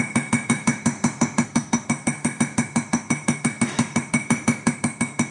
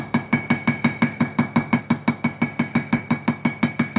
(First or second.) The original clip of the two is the second